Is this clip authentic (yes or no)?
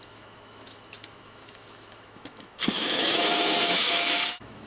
no